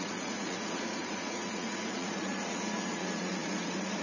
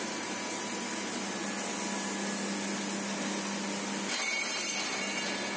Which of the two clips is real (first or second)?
second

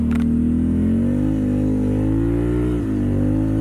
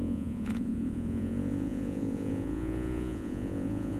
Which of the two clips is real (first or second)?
first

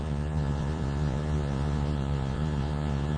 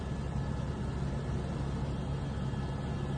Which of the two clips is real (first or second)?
second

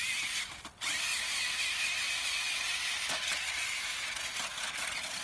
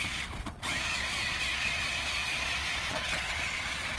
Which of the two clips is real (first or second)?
first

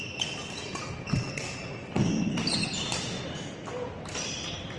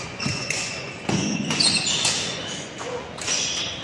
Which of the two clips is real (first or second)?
first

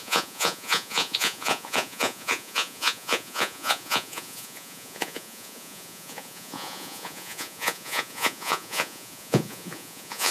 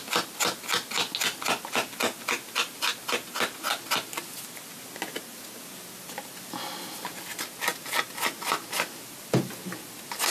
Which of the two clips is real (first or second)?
second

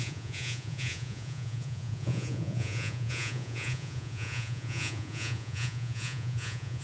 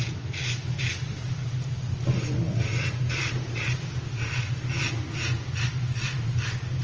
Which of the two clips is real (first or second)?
second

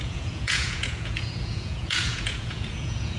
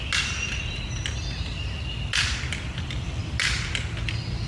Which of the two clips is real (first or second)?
second